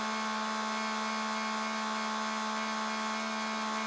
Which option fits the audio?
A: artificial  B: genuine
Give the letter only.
B